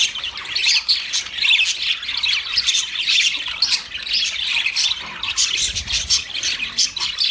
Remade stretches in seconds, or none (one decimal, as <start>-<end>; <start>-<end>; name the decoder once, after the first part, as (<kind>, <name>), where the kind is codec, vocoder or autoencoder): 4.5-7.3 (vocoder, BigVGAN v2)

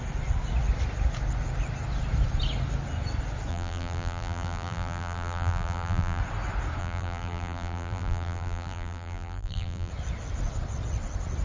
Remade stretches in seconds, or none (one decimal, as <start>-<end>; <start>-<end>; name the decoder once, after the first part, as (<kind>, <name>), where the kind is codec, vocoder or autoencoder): 3.5-6.2 (vocoder, BigVGAN v2); 6.8-9.9

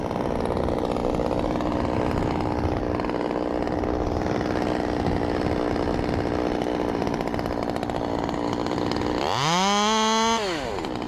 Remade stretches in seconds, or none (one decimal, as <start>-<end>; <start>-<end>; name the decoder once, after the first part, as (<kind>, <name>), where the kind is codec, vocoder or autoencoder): none